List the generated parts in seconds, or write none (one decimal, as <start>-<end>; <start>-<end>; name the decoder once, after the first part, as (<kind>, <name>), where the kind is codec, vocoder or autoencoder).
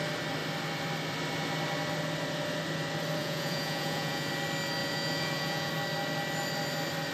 3.2-4.3 (vocoder, Vocos); 4.8-5.7